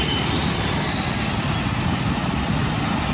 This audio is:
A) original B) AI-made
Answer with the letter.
A